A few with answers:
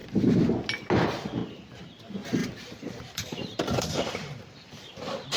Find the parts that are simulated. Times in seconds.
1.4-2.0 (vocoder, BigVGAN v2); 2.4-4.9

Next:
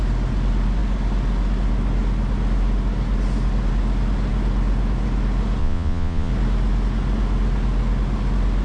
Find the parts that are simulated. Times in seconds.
5.6-6.3 (vocoder, Vocos)

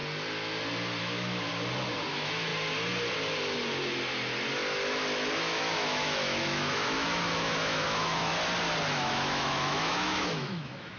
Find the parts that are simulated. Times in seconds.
1.0-1.5 (autoencoder, DAC-VAE); 2.1-2.5; 5.4-8.3; 8.9-11.0

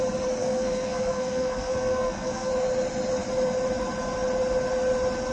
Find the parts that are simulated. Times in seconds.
0.4-2.5 (codec, SNAC)

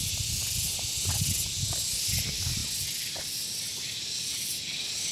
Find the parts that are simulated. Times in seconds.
none

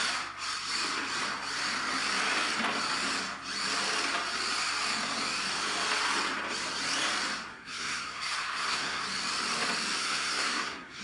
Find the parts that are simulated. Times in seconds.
7.5-9.0 (codec, SNAC); 10.0-11.0